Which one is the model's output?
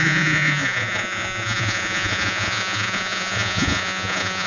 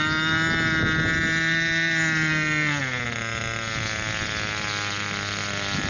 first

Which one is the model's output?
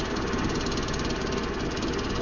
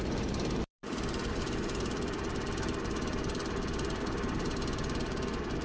second